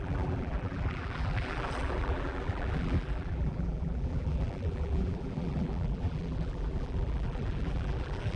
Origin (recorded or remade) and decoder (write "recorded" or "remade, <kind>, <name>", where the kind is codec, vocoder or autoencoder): remade, vocoder, BigVGAN v2